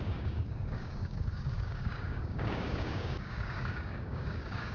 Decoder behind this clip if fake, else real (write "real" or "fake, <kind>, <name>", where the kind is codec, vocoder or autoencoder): fake, codec, DAC